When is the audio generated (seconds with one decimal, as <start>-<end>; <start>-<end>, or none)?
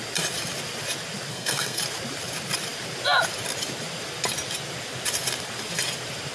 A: 1.3-1.8